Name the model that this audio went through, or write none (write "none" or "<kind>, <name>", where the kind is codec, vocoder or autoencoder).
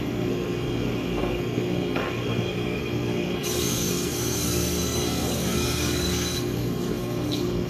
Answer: codec, SNAC